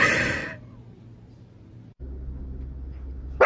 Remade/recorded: recorded